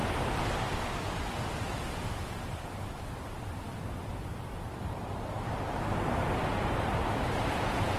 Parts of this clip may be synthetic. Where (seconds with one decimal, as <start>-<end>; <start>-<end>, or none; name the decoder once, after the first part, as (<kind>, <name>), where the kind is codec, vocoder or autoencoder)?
none